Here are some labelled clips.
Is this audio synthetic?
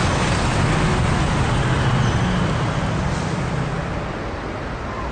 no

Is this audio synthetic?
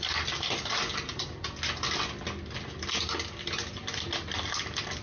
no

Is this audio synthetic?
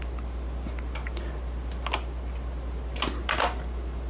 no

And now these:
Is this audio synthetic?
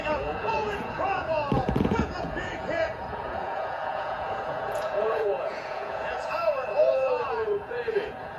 yes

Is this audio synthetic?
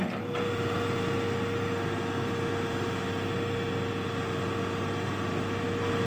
no